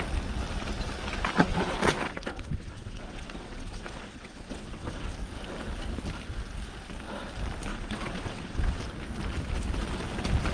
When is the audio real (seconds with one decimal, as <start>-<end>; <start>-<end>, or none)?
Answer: 0.0-1.5; 5.1-7.7; 8.8-10.5